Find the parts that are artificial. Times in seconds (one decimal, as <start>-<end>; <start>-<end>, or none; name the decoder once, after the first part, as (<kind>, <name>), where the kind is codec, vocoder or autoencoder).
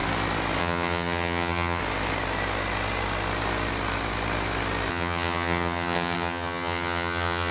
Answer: 0.6-1.8 (vocoder, HiFi-GAN); 4.9-7.5